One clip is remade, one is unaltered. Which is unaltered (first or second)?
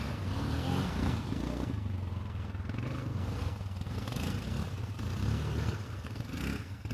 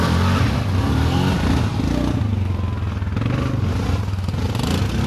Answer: second